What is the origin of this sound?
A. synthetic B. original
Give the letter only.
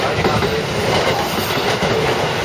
B